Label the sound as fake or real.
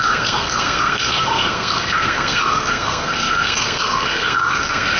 fake